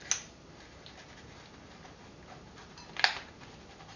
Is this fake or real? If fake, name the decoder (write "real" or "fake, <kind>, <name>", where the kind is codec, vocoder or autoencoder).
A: real